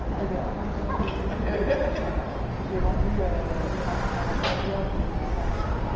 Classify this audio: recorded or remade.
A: recorded